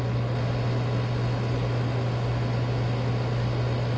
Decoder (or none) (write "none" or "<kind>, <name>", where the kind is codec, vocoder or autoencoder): none